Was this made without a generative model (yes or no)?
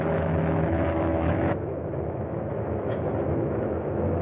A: no